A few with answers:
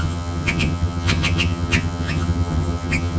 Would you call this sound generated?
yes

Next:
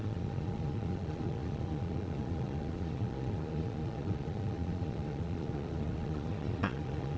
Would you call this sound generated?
yes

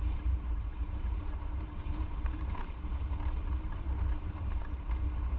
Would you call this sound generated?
yes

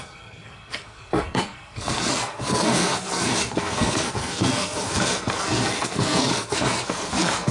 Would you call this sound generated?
yes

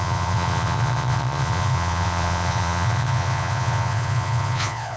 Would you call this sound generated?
yes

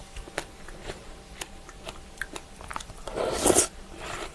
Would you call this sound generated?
no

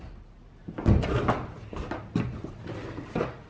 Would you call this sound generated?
no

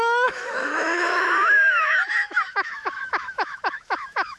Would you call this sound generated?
yes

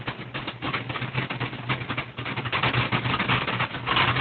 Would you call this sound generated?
no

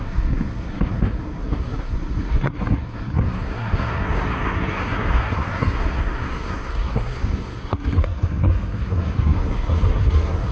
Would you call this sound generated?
yes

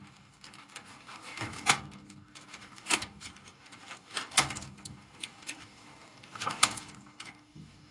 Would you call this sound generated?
yes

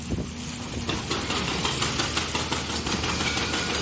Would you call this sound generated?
no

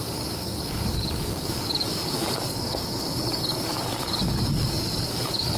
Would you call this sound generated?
yes